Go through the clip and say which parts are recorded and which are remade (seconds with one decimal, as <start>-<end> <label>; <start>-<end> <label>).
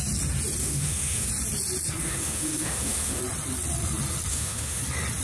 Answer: 0.0-0.6 recorded; 0.6-1.3 remade; 1.3-2.0 recorded; 2.0-3.2 remade; 3.2-4.3 recorded; 4.3-4.8 remade; 4.8-5.2 recorded